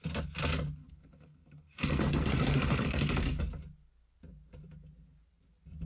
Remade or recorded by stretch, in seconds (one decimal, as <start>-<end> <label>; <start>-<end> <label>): 0.0-0.8 recorded; 0.8-3.4 remade; 3.4-5.9 recorded